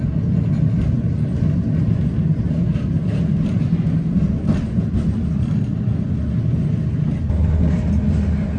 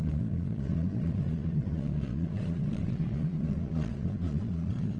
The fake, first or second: second